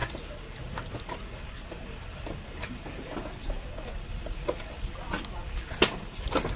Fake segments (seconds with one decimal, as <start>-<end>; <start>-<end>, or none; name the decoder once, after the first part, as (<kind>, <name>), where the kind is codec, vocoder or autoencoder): none